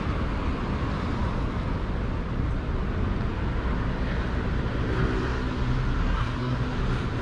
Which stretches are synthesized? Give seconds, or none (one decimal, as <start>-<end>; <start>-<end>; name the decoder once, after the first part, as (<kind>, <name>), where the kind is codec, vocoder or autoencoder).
6.0-6.6 (codec, SNAC)